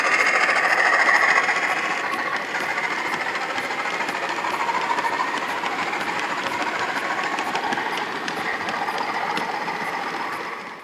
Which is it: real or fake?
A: fake